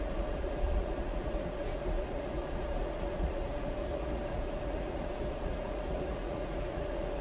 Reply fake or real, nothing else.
fake